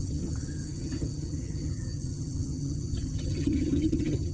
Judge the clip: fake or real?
fake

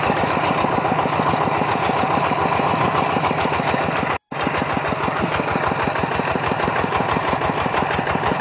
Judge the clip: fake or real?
real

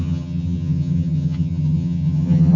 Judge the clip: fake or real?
fake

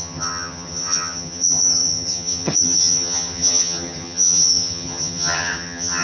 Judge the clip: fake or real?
fake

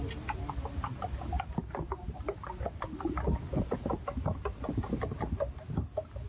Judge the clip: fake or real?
real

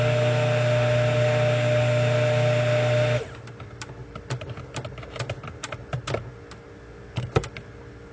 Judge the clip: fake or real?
real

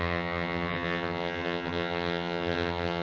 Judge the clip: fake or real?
fake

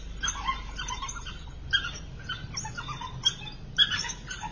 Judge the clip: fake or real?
real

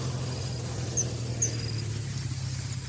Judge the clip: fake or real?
real